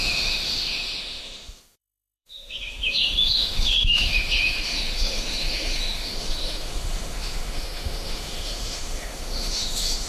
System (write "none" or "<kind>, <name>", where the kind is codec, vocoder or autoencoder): autoencoder, DAC-VAE